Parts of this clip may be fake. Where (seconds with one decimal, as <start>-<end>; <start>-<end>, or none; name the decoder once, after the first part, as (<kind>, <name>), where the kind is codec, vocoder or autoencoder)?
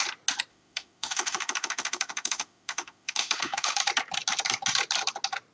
0.5-3.8 (autoencoder, DAC-VAE)